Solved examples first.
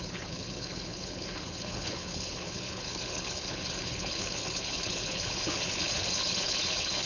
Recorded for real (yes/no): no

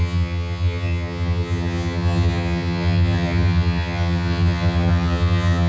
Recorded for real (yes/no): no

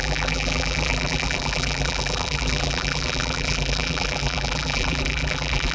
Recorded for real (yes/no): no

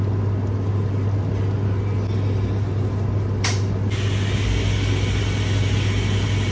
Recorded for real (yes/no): yes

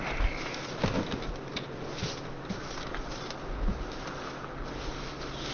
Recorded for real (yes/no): yes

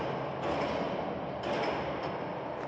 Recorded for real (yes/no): yes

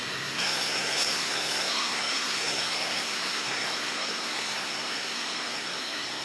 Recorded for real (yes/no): no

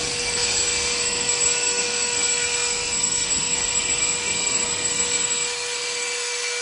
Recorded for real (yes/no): no